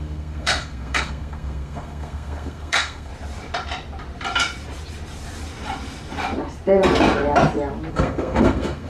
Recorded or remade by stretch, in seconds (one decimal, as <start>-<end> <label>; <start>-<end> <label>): 0.0-3.1 remade; 3.1-7.9 recorded; 7.9-8.9 remade

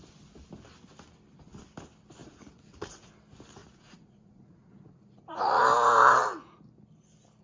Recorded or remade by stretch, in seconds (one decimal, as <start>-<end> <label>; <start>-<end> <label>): 0.0-2.2 recorded; 2.2-3.1 remade; 3.1-3.6 recorded; 3.6-5.6 remade; 5.6-7.4 recorded